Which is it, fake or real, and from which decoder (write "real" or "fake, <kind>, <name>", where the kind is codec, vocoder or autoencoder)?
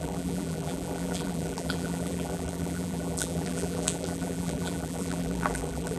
fake, vocoder, BigVGAN v2